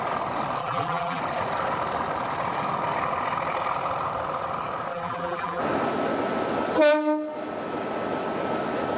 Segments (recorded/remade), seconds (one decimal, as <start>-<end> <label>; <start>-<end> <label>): 0.0-0.6 recorded; 0.6-1.2 remade; 1.2-4.9 recorded; 4.9-5.6 remade; 5.6-9.0 recorded